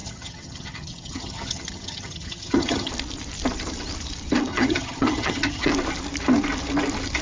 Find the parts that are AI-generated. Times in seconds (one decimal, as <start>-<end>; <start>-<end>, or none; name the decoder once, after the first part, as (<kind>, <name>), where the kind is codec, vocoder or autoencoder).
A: 0.0-2.9 (vocoder, HiFi-GAN); 4.5-5.7